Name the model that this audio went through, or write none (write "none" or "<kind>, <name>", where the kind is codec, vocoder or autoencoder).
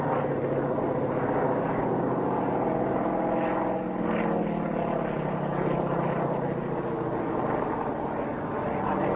none